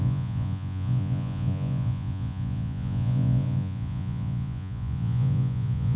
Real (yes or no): no